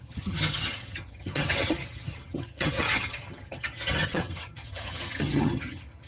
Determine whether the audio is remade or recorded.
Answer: remade